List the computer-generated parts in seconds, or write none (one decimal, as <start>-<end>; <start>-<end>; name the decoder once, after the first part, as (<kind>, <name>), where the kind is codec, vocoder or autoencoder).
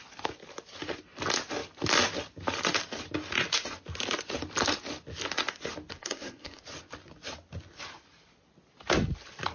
6.0-6.6 (codec, SNAC)